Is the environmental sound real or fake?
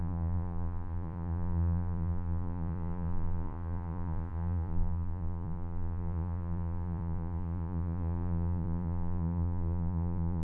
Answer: fake